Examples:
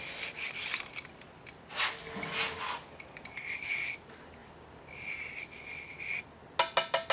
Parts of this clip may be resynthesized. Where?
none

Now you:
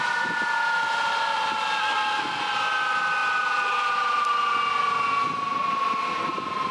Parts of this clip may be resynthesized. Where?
1.8-2.4 (codec, SNAC)

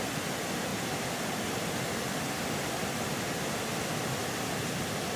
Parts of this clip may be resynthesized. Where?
none